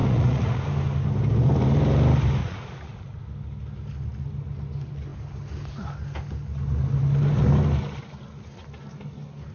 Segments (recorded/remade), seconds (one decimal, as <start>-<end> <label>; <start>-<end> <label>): 0.0-0.6 remade; 0.6-2.4 recorded; 2.4-3.2 remade; 3.2-9.5 recorded

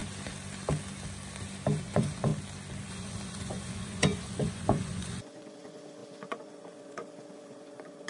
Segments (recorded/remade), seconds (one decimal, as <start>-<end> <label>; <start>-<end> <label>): 0.0-1.8 recorded; 1.8-2.3 remade; 2.3-2.9 recorded; 2.9-8.1 remade

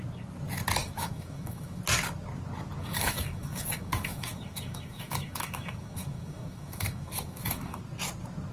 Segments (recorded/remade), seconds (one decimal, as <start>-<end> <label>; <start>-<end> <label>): 0.0-0.8 recorded; 0.8-1.8 remade; 1.8-2.8 recorded; 2.8-7.8 remade; 7.8-8.5 recorded

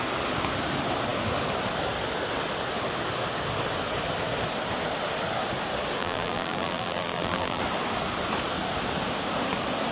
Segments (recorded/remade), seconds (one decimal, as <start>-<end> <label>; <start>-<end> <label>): 0.0-6.0 recorded; 6.0-7.6 remade; 7.6-9.9 recorded

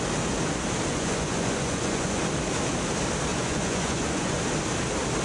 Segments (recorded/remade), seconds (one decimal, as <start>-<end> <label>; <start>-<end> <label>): 0.0-0.9 recorded; 0.9-2.2 remade; 2.2-3.3 recorded; 3.3-4.4 remade; 4.4-5.2 recorded

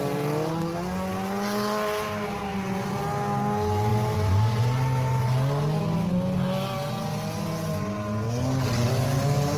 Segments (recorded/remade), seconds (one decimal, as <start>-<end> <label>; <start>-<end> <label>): 0.0-9.6 recorded

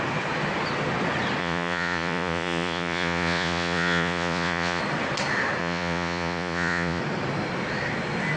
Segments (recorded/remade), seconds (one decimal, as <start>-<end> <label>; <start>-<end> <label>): 0.0-1.4 recorded; 1.4-4.8 remade; 4.8-5.6 recorded; 5.6-7.0 remade; 7.0-8.4 recorded

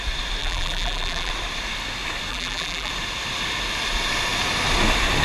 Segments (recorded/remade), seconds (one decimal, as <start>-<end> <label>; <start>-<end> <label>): 0.0-0.4 recorded; 0.4-1.3 remade; 1.3-2.3 recorded; 2.3-2.9 remade; 2.9-5.2 recorded